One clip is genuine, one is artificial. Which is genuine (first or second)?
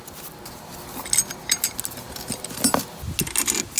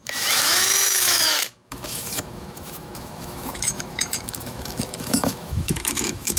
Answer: first